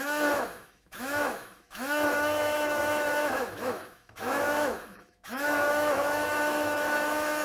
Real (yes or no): no